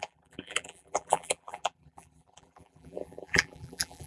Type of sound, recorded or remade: remade